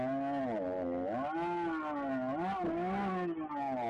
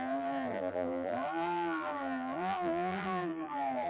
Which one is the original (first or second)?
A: first